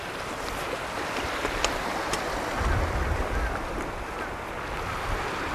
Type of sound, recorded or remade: recorded